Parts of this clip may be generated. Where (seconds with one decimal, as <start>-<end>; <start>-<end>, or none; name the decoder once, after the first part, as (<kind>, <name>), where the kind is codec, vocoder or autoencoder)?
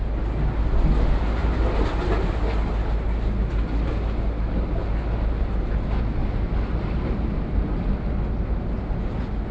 1.4-2.4 (vocoder, BigVGAN v2); 6.2-7.9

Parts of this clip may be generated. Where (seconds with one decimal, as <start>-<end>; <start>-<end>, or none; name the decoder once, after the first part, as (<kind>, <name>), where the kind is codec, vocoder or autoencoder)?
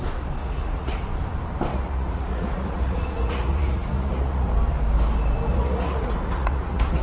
0.4-1.0 (vocoder, Vocos); 1.7-4.5; 5.5-7.0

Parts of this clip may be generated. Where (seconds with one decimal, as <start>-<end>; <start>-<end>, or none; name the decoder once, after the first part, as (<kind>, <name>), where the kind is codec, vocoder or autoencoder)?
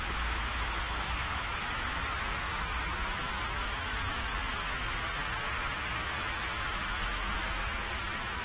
0.0-5.2 (autoencoder, DAC-VAE); 5.9-8.4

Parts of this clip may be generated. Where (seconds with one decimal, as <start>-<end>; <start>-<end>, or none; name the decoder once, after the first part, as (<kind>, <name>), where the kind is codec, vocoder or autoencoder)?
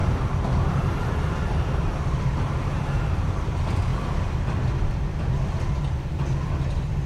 0.0-3.5 (vocoder, BigVGAN v2)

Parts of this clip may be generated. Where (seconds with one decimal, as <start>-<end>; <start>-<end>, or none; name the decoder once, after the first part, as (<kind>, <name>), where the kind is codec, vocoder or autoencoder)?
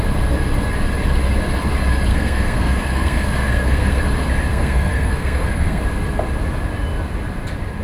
2.1-4.0 (codec, SNAC); 4.5-5.8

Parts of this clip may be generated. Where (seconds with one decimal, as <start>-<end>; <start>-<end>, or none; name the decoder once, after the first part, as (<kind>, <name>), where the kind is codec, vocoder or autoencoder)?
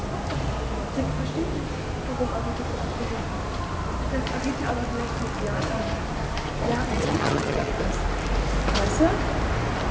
6.9-7.7 (vocoder, HiFi-GAN)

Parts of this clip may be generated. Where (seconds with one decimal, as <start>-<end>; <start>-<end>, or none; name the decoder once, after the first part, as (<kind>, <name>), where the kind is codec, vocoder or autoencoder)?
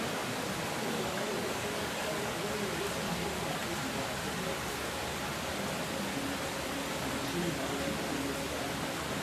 0.9-2.5 (codec, DAC)